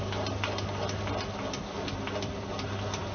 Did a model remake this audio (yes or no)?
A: no